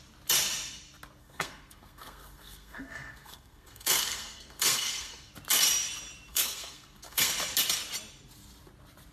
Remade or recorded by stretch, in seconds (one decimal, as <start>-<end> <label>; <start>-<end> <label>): 0.0-1.2 recorded; 1.2-5.3 remade; 5.3-6.3 recorded; 6.3-7.3 remade; 7.3-9.1 recorded